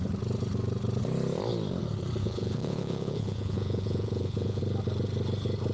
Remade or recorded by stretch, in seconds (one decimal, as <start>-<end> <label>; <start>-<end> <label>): 0.0-2.2 recorded; 2.2-4.6 remade; 4.6-5.7 recorded